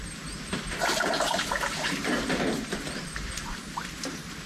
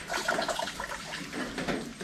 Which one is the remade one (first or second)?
first